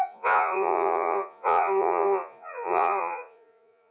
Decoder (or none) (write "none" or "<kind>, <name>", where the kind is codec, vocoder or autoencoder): vocoder, Vocos